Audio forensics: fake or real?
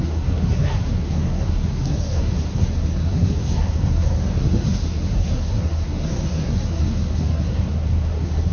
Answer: fake